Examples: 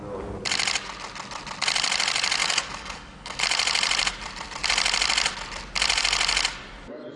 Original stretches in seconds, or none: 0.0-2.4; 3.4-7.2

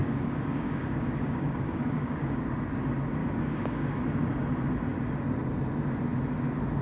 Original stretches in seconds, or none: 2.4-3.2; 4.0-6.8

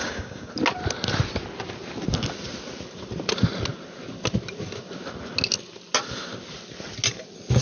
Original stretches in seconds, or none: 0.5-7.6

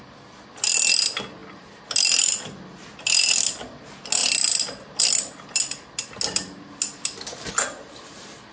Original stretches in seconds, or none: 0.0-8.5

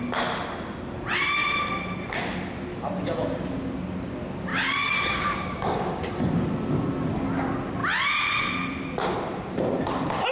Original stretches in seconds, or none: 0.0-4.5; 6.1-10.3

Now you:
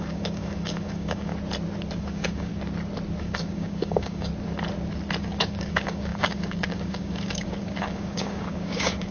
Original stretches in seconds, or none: 1.3-2.0; 2.5-3.2; 4.3-5.2